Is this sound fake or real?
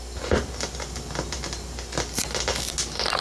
real